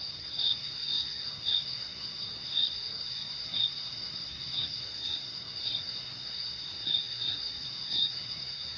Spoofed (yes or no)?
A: yes